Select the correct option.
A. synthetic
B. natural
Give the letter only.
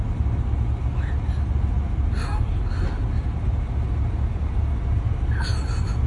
B